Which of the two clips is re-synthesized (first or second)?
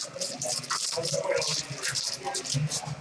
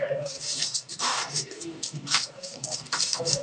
second